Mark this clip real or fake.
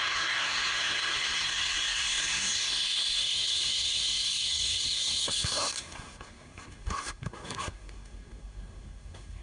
fake